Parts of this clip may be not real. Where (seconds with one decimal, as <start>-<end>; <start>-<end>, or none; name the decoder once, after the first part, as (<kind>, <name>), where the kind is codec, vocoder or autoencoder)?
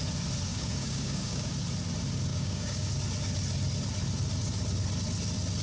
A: 0.5-1.5 (codec, DAC); 2.3-2.9